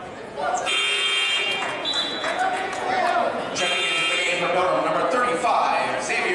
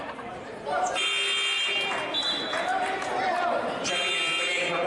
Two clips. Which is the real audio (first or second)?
second